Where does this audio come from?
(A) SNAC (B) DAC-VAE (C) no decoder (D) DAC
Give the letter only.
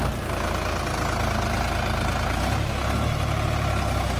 C